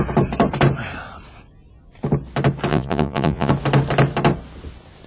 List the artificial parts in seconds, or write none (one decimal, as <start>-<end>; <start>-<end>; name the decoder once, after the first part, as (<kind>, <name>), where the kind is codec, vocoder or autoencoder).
2.7-3.5 (vocoder, Vocos)